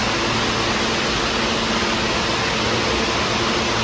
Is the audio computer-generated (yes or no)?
no